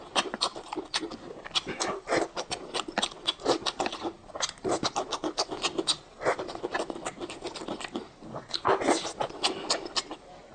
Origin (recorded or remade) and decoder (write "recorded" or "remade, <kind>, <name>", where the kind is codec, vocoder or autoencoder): recorded